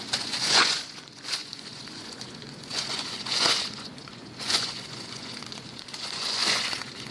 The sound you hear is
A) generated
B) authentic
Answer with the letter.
A